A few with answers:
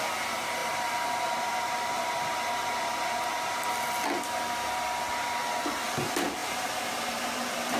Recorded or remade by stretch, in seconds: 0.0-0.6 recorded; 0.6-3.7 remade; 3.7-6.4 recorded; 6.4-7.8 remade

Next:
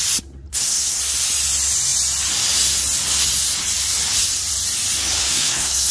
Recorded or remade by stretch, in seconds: 0.0-0.5 recorded; 0.5-1.0 remade; 1.0-5.2 recorded; 5.2-5.9 remade

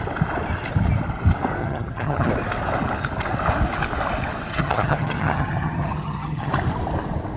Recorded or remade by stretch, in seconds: 0.0-1.6 recorded; 1.6-2.3 remade; 2.3-4.5 recorded; 4.5-6.5 remade; 6.5-7.4 recorded

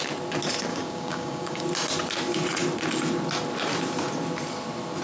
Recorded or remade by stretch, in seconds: 0.0-0.7 recorded; 0.7-1.6 remade; 1.6-5.0 recorded

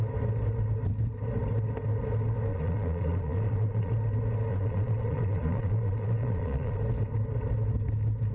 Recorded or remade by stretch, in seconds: 0.0-2.5 recorded; 2.5-3.9 remade; 3.9-4.5 recorded; 4.5-6.8 remade; 6.8-8.3 recorded

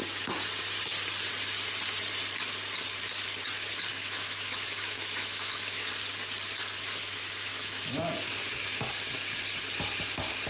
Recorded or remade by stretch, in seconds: 0.0-3.9 recorded; 3.9-5.9 remade; 5.9-7.0 recorded; 7.0-7.9 remade; 7.9-10.5 recorded

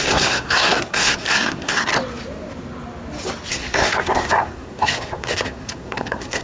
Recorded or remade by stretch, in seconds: 0.0-1.9 remade; 1.9-3.5 recorded; 3.5-6.4 remade

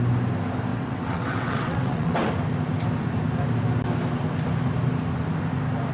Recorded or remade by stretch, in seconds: 0.0-0.7 recorded; 0.7-2.3 remade; 2.3-5.9 recorded